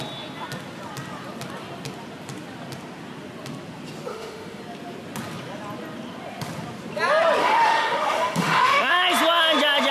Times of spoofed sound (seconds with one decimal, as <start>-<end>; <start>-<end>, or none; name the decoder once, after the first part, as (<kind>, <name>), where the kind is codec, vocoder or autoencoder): 4.1-4.6 (autoencoder, DAC-VAE); 7.4-8.9